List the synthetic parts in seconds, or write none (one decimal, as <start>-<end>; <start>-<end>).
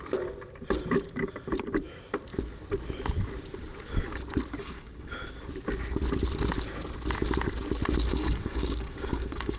4.6-5.1; 8.1-9.6